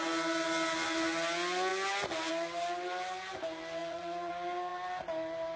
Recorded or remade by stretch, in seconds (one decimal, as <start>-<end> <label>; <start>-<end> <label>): 0.0-3.8 recorded; 3.8-4.3 remade; 4.3-5.6 recorded